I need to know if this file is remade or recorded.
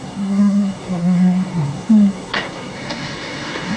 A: remade